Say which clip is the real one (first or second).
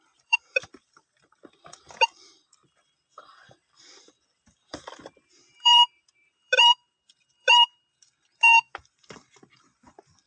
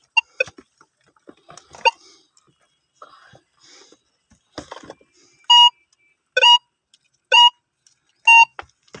second